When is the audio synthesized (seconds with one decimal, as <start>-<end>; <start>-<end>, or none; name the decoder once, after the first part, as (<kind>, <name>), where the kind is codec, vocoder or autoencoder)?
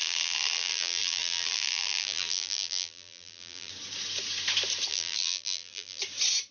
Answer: 0.0-3.7 (vocoder, BigVGAN v2); 4.9-6.0